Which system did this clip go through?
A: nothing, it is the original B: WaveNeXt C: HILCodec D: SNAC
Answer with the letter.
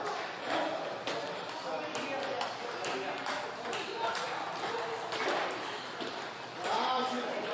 A